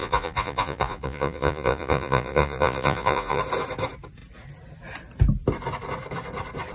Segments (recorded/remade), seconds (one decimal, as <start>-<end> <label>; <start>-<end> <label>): 0.0-3.4 remade; 3.4-6.7 recorded